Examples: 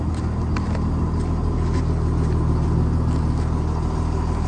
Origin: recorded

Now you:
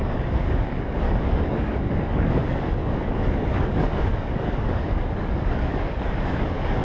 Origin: remade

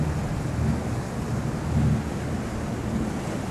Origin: recorded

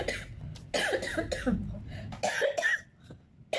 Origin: recorded